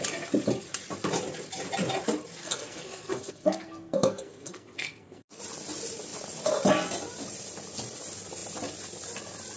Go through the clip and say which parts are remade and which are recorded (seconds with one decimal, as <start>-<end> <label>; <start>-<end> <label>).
0.0-2.4 recorded; 2.4-5.4 remade; 5.4-9.6 recorded